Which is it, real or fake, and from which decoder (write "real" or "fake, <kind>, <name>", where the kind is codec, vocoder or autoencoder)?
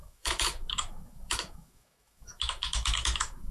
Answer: fake, autoencoder, DAC-VAE